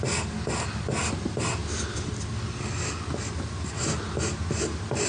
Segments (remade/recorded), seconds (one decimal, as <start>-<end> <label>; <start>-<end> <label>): 0.0-5.1 recorded